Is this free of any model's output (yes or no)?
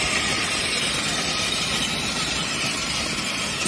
no